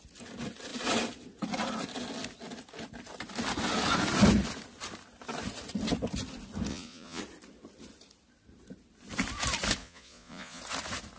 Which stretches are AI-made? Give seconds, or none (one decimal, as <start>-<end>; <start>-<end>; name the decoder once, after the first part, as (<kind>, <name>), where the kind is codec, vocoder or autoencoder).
6.7-7.2 (vocoder, Vocos); 9.8-10.6